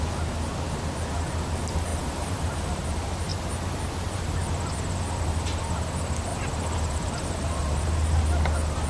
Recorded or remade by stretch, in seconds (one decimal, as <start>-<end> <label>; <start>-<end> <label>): 0.0-1.9 recorded; 1.9-2.8 remade; 2.8-3.3 recorded; 3.3-4.2 remade; 4.2-6.3 recorded; 6.3-8.2 remade; 8.2-8.9 recorded